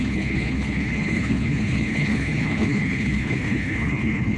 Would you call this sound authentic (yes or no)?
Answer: no